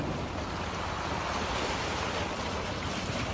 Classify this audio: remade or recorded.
recorded